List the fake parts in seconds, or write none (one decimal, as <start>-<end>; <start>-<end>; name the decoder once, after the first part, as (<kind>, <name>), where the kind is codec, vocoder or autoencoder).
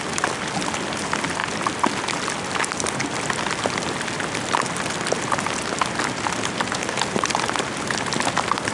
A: none